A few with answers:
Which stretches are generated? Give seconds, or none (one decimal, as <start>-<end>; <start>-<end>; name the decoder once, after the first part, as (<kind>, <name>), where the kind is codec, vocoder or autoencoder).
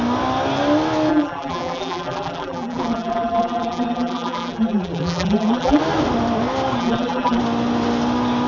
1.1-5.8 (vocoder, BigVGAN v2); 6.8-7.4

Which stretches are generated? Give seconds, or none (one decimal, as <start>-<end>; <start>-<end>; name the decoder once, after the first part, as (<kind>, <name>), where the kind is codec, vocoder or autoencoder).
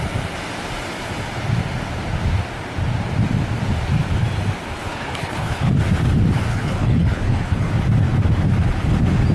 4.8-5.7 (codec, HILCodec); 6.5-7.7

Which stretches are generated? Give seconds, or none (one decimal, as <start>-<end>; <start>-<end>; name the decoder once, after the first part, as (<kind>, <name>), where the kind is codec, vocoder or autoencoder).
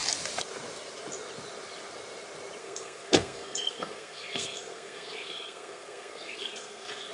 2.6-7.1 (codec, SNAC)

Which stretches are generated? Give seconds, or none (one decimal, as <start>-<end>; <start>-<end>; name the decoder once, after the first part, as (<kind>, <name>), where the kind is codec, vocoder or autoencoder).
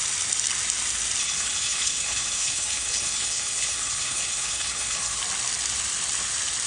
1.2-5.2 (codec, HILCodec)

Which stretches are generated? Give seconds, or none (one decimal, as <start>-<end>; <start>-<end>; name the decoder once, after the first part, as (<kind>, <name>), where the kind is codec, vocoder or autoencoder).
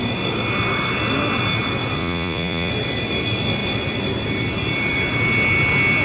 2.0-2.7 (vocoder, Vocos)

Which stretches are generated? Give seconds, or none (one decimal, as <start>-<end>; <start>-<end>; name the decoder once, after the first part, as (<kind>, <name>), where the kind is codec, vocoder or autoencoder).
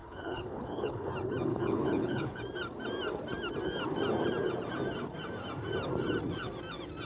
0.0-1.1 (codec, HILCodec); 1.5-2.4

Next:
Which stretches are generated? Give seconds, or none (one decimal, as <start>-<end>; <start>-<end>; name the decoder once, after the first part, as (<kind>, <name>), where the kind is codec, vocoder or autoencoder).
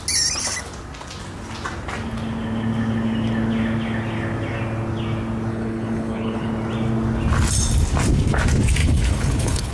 5.5-6.5 (codec, HILCodec); 8.8-9.7